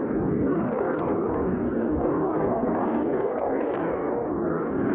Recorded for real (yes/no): no